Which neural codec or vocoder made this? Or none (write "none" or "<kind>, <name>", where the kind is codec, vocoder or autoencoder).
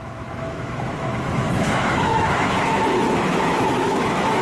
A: autoencoder, DAC-VAE